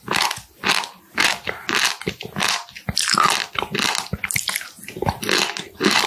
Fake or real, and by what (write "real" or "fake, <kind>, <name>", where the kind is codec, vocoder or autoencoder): real